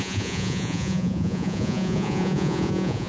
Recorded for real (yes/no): no